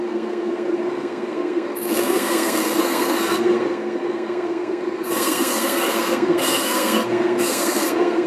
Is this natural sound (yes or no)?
no